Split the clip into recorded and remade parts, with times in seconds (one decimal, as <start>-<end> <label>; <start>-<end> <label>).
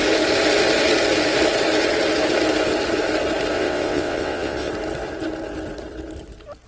0.0-3.5 recorded; 3.5-4.7 remade; 4.7-6.7 recorded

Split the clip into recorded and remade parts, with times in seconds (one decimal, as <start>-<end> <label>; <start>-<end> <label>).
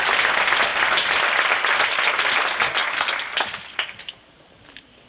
0.0-5.1 recorded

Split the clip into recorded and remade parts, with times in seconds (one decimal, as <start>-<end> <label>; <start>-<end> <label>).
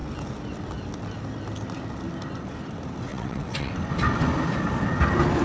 0.0-3.1 recorded; 3.1-3.7 remade; 3.7-5.4 recorded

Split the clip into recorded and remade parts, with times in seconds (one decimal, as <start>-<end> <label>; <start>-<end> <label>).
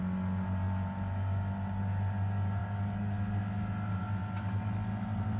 0.0-5.4 recorded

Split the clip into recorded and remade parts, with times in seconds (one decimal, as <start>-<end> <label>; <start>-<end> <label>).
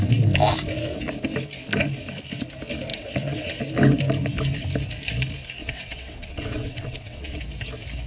0.0-2.9 recorded; 2.9-3.5 remade; 3.5-5.6 recorded; 5.6-7.4 remade; 7.4-8.1 recorded